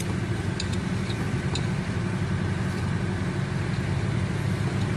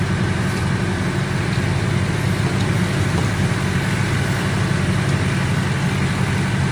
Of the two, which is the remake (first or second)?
first